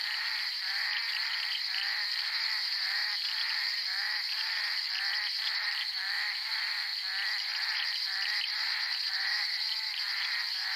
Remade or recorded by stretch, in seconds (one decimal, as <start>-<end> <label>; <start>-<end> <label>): 0.0-6.9 remade; 6.9-7.4 recorded; 7.4-10.8 remade